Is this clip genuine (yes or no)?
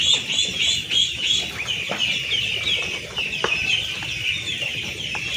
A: yes